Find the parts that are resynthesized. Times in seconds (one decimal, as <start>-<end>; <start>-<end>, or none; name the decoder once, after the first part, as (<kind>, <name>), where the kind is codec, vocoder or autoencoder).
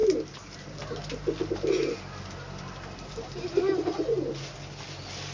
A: none